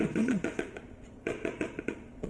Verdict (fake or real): fake